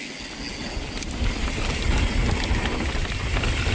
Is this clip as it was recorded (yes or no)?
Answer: yes